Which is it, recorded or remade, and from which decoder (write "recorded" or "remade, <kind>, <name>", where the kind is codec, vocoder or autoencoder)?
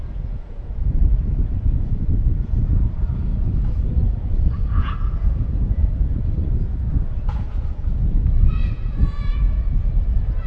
remade, vocoder, Vocos